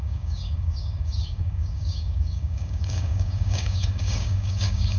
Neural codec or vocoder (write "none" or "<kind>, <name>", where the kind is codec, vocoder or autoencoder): codec, DAC